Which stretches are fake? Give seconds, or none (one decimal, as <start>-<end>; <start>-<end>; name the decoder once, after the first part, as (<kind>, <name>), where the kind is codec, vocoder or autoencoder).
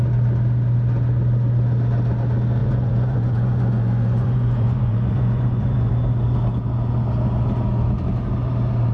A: 2.6-5.9 (vocoder, Vocos)